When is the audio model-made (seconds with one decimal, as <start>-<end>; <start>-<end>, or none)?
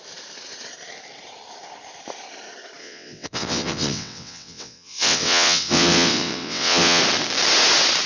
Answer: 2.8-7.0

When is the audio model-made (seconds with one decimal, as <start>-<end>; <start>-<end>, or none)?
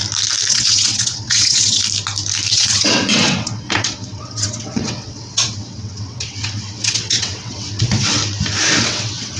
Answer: 0.5-1.8; 2.5-8.2; 8.8-9.4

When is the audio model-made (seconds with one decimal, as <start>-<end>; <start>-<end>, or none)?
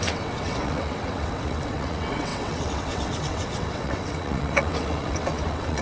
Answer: 0.0-5.8